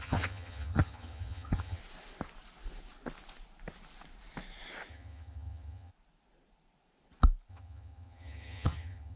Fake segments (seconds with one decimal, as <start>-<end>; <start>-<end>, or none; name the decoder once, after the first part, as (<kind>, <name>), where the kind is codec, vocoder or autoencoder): 0.0-1.8 (vocoder, HiFi-GAN); 4.9-5.9; 7.5-9.2